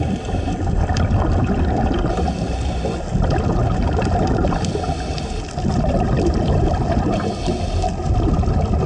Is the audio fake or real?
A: real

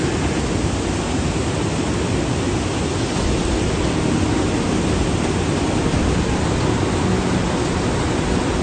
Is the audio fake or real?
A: real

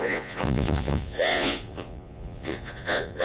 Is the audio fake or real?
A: fake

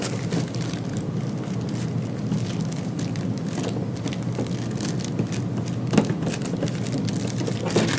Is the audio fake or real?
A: real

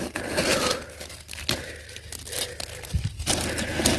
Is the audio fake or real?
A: real